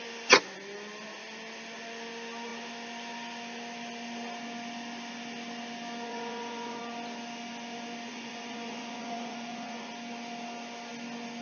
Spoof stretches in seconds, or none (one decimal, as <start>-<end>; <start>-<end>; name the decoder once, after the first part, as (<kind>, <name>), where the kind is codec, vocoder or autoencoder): 6.1-6.8 (vocoder, Vocos); 8.1-9.9